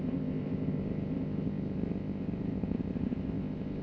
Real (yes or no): no